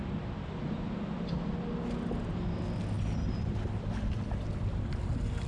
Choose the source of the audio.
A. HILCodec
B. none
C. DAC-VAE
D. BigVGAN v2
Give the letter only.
B